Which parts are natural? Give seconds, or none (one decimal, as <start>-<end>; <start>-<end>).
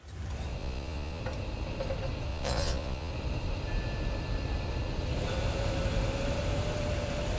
0.0-0.6; 1.2-2.3; 3.1-7.4